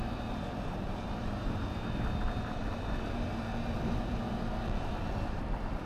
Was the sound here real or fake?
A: fake